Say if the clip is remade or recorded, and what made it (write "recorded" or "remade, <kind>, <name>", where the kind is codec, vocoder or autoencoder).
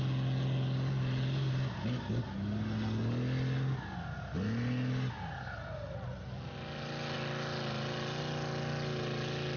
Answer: recorded